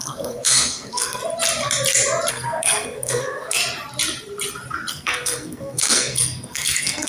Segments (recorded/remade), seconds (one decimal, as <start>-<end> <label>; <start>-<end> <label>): 0.0-1.2 remade; 1.2-2.3 recorded; 2.3-3.6 remade; 3.6-4.9 recorded; 4.9-7.1 remade